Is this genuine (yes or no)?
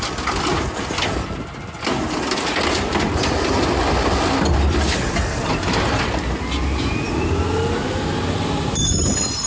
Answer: yes